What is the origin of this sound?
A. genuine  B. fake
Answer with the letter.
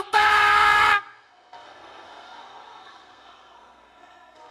B